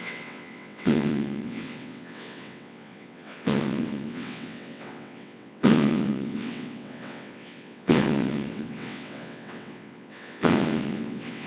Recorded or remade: remade